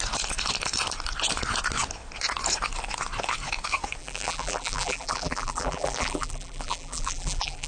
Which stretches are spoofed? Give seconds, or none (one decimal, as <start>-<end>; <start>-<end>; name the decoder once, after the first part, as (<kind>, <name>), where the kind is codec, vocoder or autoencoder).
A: 4.0-7.7 (vocoder, BigVGAN v2)